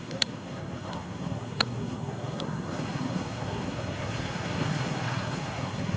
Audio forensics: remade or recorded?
remade